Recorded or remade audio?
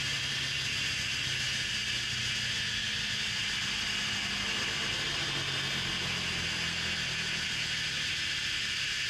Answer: recorded